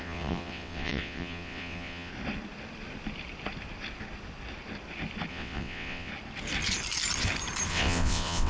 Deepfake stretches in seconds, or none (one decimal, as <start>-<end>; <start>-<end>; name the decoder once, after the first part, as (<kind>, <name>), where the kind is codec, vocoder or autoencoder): 0.0-2.1 (vocoder, WaveNeXt); 5.3-6.1; 7.7-8.5